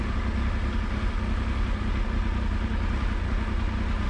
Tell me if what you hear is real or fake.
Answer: real